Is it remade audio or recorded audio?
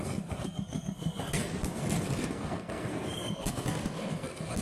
remade